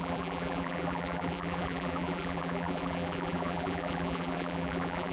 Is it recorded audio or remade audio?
remade